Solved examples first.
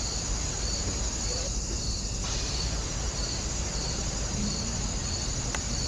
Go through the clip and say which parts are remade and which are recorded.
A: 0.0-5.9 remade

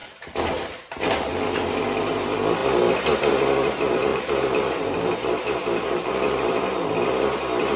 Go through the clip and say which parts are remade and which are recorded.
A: 0.0-1.3 remade; 1.3-4.1 recorded; 4.1-6.1 remade; 6.1-7.8 recorded

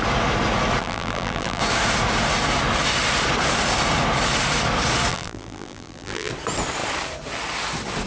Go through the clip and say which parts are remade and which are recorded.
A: 0.0-0.8 recorded; 0.8-1.6 remade; 1.6-5.1 recorded; 5.1-6.3 remade; 6.3-8.1 recorded